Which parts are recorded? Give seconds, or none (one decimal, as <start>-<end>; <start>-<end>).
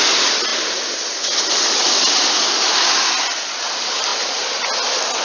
0.0-5.2